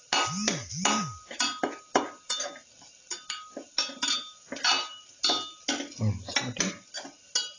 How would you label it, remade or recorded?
recorded